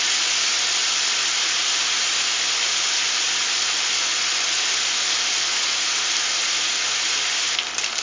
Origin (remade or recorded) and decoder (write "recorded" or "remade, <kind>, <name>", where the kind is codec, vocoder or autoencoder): recorded